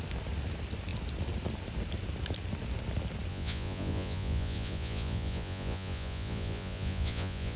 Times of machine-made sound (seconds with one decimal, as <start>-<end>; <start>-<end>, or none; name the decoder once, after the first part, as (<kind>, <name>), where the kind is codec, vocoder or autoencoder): 3.3-7.6 (vocoder, Vocos)